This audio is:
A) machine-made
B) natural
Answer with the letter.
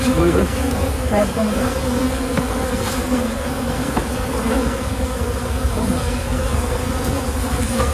A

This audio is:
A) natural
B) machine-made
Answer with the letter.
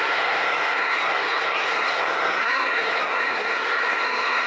B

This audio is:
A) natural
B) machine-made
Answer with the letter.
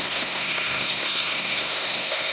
B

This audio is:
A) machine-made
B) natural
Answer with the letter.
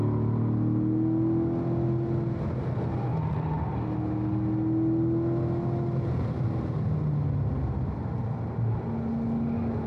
B